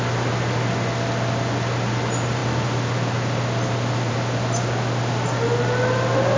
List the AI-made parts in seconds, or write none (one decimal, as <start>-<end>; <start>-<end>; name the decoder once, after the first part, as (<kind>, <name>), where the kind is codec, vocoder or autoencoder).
none

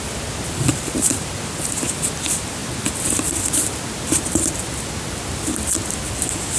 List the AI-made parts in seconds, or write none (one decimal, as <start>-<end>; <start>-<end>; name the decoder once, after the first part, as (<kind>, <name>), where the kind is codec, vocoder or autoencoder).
0.7-1.3 (vocoder, BigVGAN v2)